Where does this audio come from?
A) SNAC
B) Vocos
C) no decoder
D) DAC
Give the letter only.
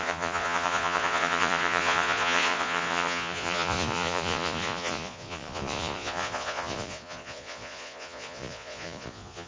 B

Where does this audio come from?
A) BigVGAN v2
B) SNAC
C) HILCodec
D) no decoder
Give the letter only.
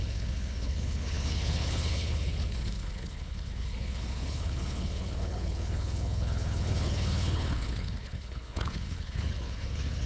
C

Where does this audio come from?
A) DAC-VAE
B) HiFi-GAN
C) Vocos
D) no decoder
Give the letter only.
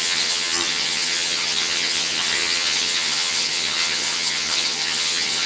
B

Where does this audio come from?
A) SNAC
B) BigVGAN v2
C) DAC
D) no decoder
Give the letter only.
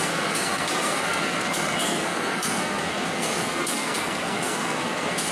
A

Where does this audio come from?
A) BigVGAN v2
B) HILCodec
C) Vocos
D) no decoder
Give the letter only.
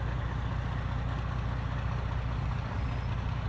D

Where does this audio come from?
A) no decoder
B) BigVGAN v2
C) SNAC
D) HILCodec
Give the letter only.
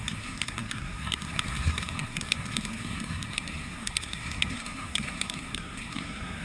C